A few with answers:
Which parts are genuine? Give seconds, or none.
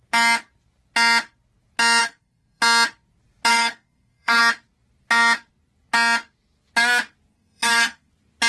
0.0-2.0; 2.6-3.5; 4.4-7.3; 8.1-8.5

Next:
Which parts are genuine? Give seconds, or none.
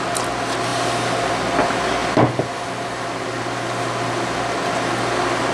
0.0-5.5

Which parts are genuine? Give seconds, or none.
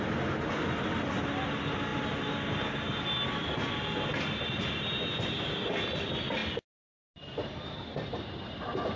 0.0-9.0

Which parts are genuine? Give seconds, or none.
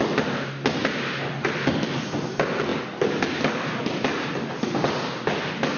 0.0-5.8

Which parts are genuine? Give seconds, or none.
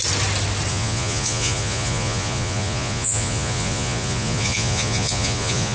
0.0-0.7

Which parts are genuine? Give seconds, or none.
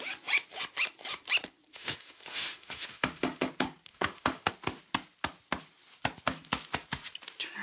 0.0-1.7; 3.5-3.9; 4.5-7.6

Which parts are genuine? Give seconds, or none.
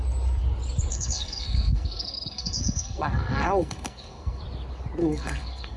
0.0-0.9; 4.4-5.0